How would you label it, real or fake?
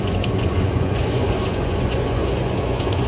fake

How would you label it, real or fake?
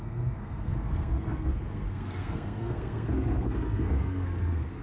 fake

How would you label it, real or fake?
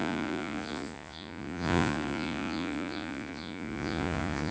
fake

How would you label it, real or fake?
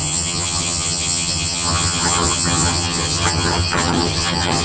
fake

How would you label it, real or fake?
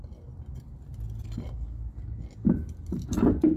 real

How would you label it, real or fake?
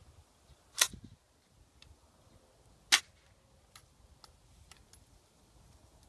real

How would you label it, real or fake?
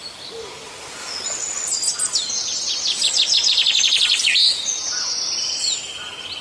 real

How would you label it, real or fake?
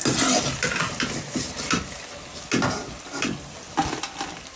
real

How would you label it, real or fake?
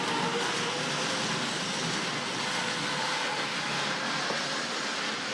real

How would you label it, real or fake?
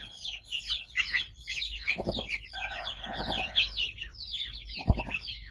fake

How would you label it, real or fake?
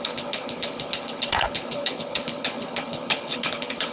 fake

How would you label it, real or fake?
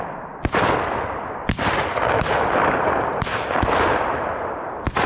real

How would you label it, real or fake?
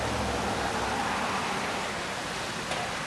real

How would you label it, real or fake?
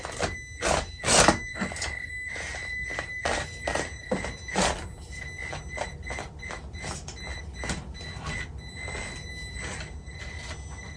real